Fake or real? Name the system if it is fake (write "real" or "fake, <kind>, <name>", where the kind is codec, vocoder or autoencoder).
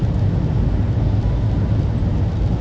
real